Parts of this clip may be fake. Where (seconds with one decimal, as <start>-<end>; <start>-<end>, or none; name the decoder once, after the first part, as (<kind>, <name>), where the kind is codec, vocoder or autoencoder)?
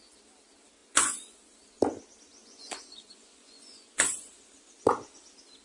0.8-1.4 (vocoder, Vocos); 2.3-4.3